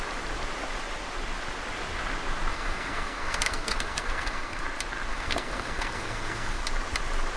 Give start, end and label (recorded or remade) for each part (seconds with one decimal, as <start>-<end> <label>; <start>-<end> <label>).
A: 0.0-2.5 recorded; 2.5-4.6 remade; 4.6-5.1 recorded; 5.1-6.6 remade; 6.6-7.4 recorded